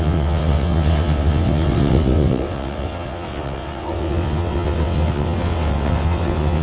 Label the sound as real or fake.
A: fake